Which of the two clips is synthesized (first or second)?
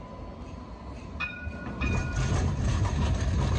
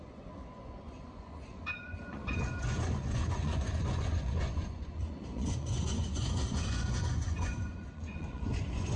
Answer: second